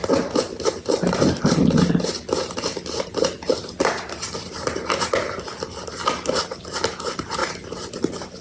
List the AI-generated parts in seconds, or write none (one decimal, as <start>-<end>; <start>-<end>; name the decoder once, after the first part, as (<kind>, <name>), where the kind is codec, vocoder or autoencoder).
none